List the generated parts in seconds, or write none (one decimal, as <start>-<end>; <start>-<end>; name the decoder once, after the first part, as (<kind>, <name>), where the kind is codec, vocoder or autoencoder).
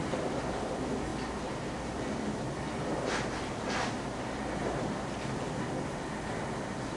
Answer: none